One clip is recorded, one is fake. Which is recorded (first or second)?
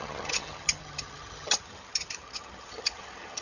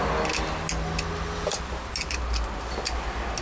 second